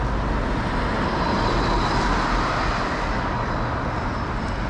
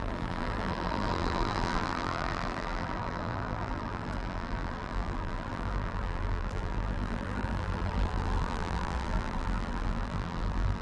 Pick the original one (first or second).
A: first